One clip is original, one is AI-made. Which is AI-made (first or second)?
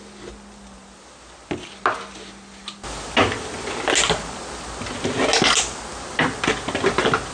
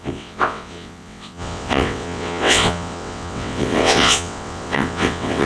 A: second